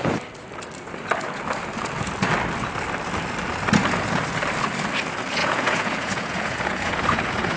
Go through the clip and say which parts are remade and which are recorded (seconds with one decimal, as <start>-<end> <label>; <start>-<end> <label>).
0.0-5.4 recorded; 5.4-7.6 remade